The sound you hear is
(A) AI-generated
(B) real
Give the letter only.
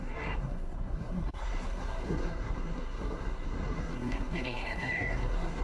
A